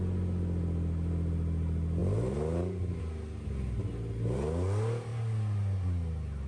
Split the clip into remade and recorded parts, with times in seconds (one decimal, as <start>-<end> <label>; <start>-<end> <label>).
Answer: 0.0-6.5 recorded